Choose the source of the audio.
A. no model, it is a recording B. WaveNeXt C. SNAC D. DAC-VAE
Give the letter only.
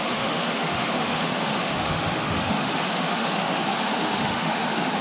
D